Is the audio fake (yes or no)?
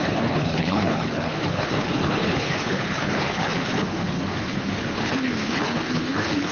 yes